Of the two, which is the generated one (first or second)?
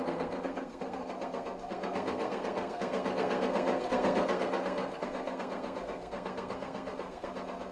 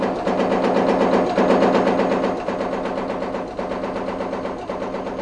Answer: first